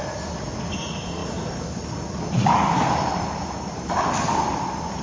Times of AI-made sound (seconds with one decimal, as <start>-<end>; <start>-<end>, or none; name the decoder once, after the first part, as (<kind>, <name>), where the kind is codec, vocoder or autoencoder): 1.2-4.1 (vocoder, BigVGAN v2)